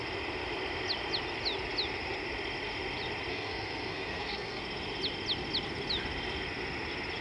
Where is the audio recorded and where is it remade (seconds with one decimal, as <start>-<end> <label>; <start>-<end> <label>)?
0.0-3.3 recorded; 3.3-4.6 remade; 4.6-7.2 recorded